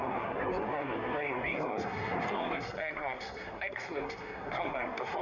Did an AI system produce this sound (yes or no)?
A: yes